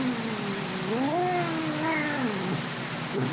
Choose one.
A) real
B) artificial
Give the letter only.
A